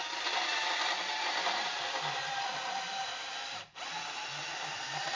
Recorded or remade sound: remade